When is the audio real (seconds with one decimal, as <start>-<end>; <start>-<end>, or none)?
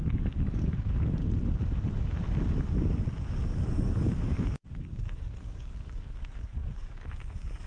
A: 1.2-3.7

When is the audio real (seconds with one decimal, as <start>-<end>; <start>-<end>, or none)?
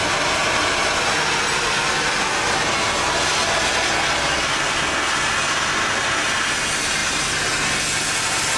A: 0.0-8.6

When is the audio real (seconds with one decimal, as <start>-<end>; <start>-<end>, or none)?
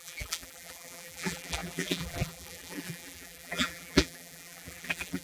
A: none